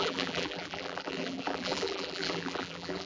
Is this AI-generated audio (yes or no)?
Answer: yes